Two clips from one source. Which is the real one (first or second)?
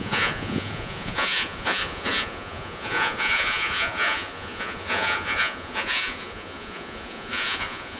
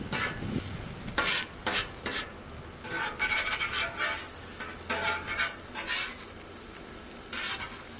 second